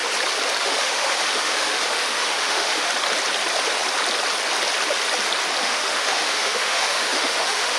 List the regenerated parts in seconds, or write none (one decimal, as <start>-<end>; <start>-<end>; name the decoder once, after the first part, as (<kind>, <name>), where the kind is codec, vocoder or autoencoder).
0.6-2.9 (autoencoder, DAC-VAE); 5.6-7.8